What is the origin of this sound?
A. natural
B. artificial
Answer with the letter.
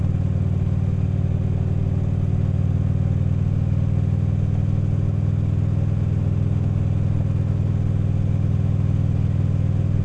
A